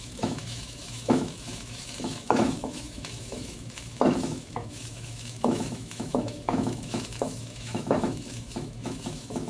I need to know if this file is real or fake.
fake